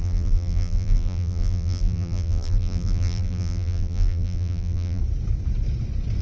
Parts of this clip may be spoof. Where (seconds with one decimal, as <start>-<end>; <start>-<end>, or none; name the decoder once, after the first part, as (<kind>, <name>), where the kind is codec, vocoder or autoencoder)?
0.0-5.0 (vocoder, BigVGAN v2)